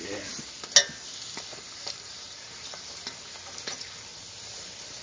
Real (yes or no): yes